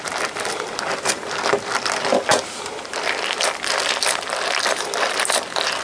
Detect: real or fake fake